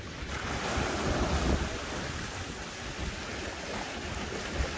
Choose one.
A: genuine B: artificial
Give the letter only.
A